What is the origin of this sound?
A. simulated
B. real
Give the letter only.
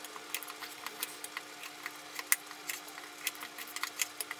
B